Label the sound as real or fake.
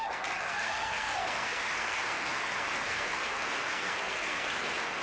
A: fake